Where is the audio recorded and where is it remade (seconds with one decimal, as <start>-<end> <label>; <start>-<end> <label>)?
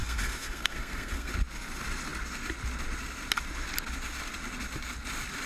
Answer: 0.0-1.3 remade; 1.3-5.5 recorded